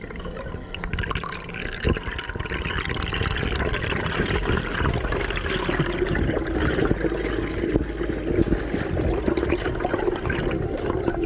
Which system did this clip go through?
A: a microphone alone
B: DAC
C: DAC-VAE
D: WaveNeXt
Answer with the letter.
A